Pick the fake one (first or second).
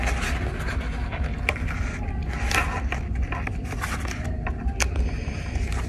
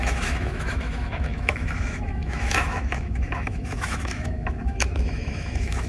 second